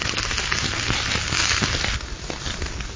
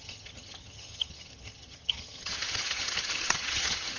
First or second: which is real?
first